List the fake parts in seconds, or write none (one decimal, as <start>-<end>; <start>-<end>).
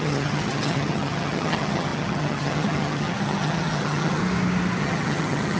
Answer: 0.0-4.2; 4.8-5.6